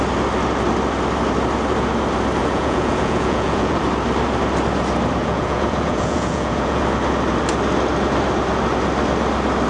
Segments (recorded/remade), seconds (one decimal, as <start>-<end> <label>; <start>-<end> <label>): 0.0-2.4 recorded; 2.4-3.8 remade; 3.8-5.2 recorded; 5.2-6.8 remade; 6.8-9.7 recorded